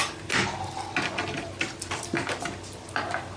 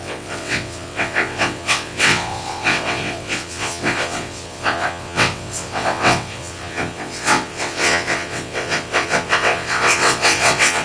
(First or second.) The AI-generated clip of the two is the second